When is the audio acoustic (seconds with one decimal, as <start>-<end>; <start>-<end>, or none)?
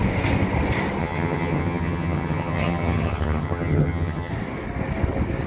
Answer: 0.0-1.0; 4.3-5.5